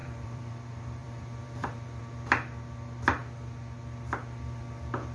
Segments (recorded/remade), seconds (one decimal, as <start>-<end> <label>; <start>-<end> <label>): 0.0-0.5 remade; 0.5-1.0 recorded; 1.0-2.0 remade; 2.0-5.1 recorded